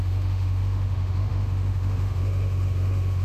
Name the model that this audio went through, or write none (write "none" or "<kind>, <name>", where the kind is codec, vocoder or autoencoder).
autoencoder, DAC-VAE